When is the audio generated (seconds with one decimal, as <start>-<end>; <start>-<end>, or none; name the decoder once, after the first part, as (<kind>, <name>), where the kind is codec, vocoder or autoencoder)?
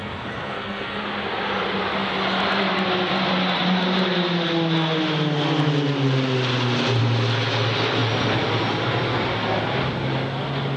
0.0-1.0 (codec, SNAC)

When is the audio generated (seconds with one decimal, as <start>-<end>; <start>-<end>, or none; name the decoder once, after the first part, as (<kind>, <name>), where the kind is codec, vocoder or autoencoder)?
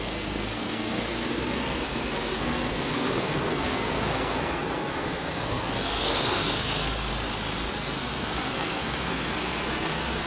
0.0-7.1 (codec, SNAC); 7.7-10.3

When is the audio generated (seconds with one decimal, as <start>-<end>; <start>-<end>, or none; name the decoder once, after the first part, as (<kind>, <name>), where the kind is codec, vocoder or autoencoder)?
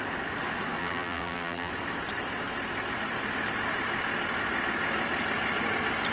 0.8-1.7 (vocoder, BigVGAN v2)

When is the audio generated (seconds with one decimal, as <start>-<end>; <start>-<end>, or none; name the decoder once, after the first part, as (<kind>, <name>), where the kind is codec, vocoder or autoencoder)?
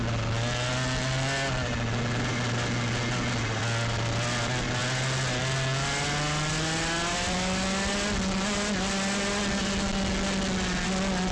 none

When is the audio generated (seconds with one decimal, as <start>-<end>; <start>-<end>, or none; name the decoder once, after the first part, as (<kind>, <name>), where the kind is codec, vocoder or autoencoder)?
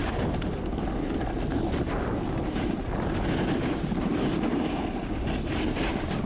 none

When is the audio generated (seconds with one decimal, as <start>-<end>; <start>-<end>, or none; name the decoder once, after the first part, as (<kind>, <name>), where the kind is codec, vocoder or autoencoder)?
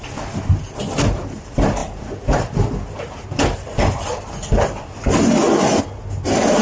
none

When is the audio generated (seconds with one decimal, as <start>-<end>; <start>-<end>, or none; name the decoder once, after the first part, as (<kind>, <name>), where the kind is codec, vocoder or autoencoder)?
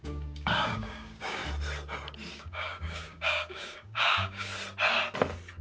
0.0-1.4 (codec, DAC); 2.3-4.5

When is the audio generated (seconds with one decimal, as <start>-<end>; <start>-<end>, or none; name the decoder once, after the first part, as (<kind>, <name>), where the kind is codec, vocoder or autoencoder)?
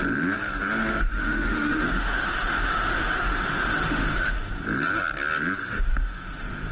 0.9-4.5 (autoencoder, DAC-VAE); 5.6-6.7